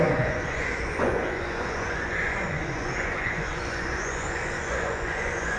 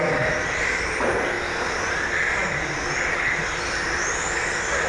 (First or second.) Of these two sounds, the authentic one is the second